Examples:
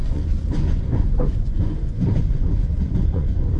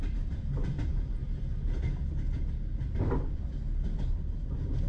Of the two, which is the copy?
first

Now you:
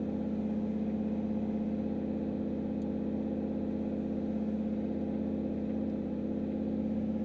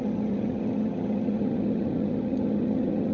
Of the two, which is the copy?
second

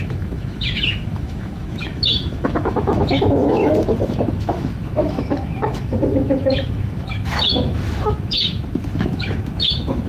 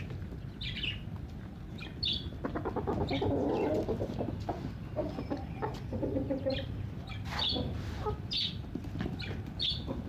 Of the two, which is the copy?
first